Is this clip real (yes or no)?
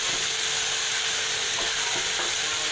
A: yes